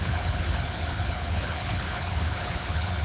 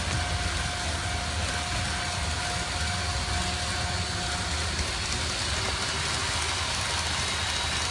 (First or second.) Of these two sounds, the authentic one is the second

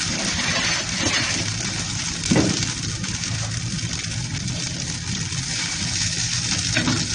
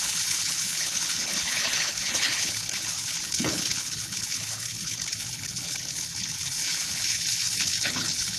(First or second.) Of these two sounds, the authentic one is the first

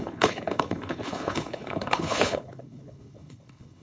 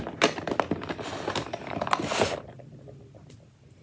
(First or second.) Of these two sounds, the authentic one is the second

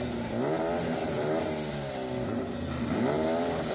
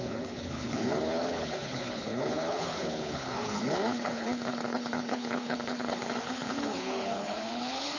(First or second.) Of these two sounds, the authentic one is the first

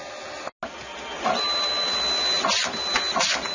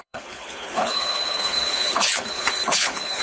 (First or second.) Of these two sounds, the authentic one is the first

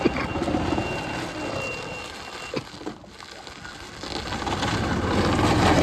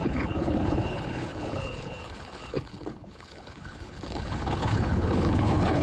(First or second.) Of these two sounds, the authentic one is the first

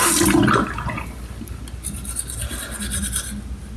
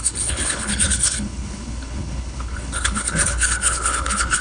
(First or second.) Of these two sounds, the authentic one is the first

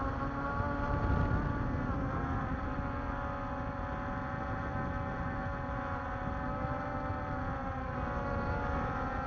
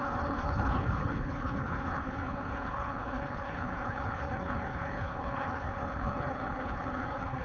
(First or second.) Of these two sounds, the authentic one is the first